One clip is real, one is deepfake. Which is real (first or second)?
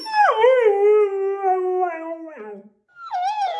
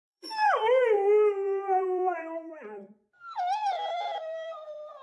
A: first